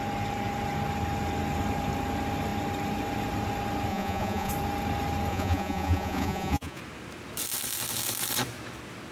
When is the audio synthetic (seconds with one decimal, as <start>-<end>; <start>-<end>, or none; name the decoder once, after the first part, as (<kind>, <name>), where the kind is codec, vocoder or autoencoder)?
3.9-4.5 (vocoder, Vocos); 5.3-6.8